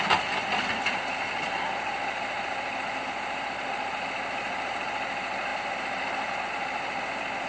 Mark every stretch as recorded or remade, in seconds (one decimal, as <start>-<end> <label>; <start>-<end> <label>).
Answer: 0.0-7.5 recorded